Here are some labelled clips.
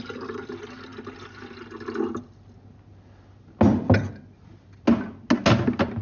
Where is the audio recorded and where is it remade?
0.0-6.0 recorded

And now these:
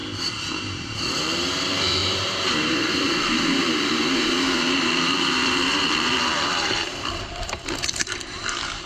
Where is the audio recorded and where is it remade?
0.0-8.9 remade